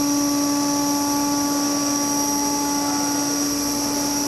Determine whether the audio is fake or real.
real